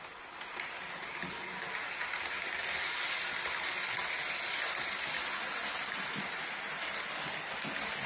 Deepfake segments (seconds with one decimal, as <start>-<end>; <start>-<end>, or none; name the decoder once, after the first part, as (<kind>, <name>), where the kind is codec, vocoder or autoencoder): none